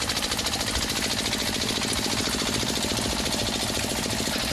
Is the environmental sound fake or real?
real